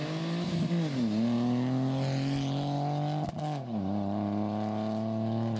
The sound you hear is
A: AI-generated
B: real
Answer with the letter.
B